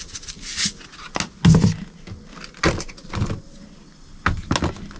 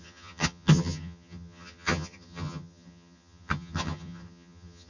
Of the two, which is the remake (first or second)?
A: second